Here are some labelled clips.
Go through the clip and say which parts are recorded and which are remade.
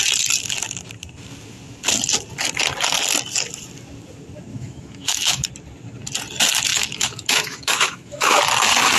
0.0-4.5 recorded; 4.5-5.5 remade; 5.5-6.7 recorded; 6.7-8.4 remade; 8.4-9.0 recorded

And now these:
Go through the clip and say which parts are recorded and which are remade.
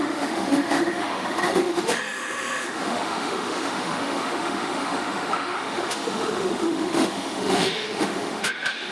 0.0-8.9 remade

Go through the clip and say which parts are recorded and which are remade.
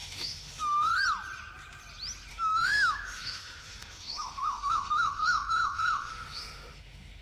0.0-0.9 remade; 0.9-2.3 recorded; 2.3-7.2 remade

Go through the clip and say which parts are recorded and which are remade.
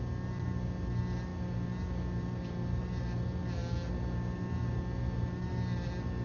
0.0-6.2 recorded